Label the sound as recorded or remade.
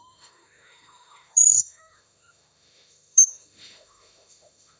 remade